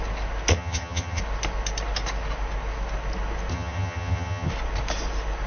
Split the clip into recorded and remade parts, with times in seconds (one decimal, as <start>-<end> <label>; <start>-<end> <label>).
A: 0.0-0.5 recorded; 0.5-1.2 remade; 1.2-3.5 recorded; 3.5-4.5 remade; 4.5-5.5 recorded

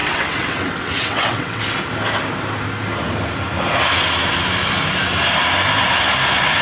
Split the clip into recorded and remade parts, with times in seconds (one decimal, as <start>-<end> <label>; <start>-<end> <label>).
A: 0.0-1.6 remade; 1.6-6.6 recorded

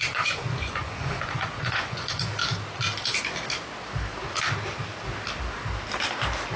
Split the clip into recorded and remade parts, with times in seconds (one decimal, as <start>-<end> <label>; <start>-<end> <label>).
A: 0.0-2.4 remade; 2.4-6.6 recorded